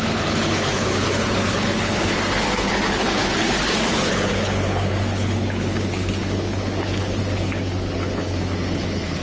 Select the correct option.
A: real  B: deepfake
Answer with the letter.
B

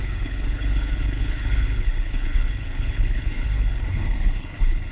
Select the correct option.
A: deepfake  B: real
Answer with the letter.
A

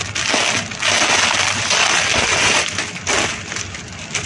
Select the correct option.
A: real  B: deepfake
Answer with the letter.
A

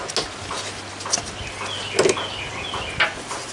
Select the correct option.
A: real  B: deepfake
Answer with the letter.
A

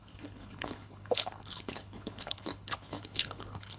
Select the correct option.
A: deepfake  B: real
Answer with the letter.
A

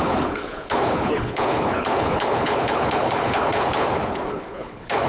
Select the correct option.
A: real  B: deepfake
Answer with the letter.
B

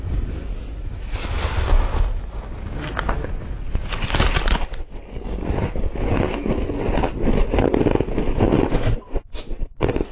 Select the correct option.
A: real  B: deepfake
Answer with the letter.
A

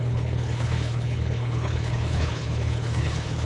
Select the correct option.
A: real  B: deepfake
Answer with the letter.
B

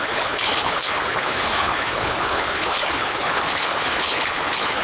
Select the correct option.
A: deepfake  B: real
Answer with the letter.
A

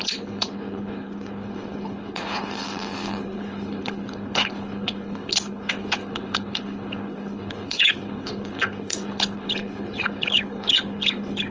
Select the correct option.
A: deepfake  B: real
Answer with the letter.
A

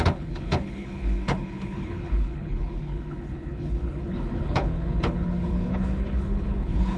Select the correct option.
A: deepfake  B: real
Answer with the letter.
A